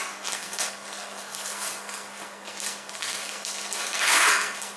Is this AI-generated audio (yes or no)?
yes